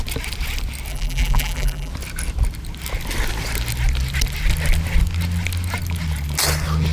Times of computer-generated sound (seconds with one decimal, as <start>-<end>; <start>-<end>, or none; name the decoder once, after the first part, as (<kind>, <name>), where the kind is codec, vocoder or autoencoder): 0.9-1.9 (vocoder, BigVGAN v2)